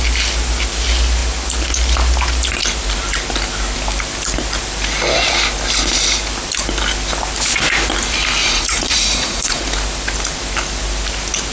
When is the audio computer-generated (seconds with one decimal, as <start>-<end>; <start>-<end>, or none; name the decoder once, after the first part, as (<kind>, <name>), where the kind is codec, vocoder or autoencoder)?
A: 8.4-9.6 (vocoder, Vocos)